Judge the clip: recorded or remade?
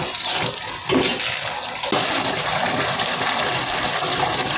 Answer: recorded